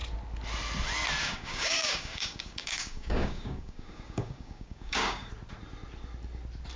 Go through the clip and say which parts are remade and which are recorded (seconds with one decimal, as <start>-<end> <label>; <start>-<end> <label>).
0.0-1.2 recorded; 1.2-5.3 remade; 5.3-6.8 recorded

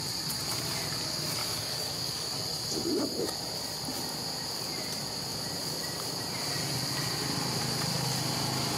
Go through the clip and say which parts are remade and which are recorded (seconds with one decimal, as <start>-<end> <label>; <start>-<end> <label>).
0.0-1.4 recorded; 1.4-2.3 remade; 2.3-8.8 recorded

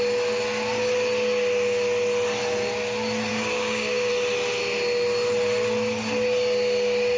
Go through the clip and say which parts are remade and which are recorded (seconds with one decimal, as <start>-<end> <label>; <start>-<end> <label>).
0.0-3.3 recorded; 3.3-4.1 remade; 4.1-7.2 recorded

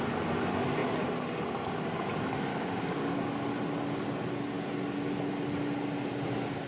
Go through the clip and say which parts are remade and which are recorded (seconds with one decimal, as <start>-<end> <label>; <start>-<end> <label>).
0.0-2.5 recorded; 2.5-3.3 remade; 3.3-6.7 recorded